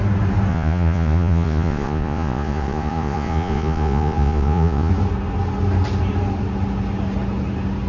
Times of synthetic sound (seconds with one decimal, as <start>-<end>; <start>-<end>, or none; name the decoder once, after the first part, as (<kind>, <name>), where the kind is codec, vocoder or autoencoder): 0.5-4.9 (vocoder, Vocos)